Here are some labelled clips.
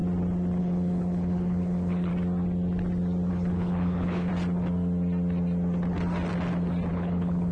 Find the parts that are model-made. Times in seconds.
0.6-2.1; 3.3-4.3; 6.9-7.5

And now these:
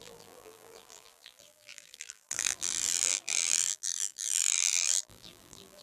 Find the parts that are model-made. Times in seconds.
0.0-5.8